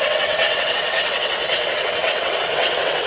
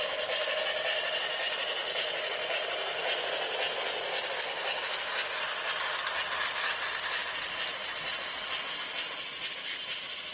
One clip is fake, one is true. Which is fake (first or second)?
first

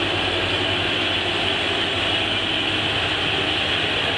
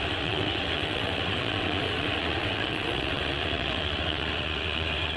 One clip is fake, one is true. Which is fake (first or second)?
second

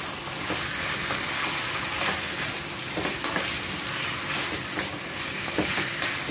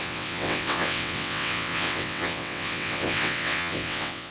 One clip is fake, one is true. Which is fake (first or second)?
second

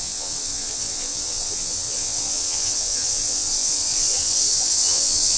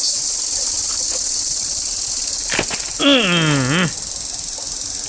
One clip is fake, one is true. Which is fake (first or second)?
first